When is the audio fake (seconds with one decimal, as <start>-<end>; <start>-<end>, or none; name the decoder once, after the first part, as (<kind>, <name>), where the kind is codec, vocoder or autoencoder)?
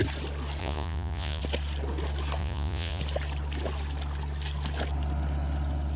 0.6-1.4 (vocoder, Vocos); 2.4-3.0